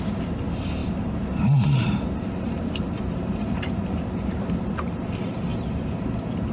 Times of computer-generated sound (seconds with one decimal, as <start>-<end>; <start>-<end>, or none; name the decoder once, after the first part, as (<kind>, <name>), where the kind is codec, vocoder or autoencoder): 0.8-4.7 (vocoder, BigVGAN v2); 5.5-6.5